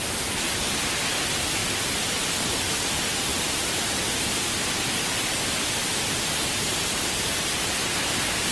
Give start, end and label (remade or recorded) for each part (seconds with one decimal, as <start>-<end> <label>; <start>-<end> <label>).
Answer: 0.0-8.5 recorded